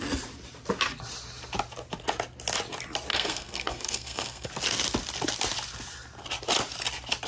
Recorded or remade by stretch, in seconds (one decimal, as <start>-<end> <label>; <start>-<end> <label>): 0.0-3.1 recorded; 3.1-4.5 remade; 4.5-7.3 recorded